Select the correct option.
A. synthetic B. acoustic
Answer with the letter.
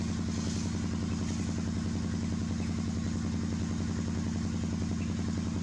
B